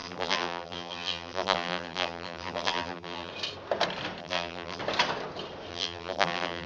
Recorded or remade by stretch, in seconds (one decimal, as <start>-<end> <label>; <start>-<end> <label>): 0.0-3.3 remade; 3.3-4.2 recorded; 4.2-4.8 remade; 4.8-5.7 recorded; 5.7-6.7 remade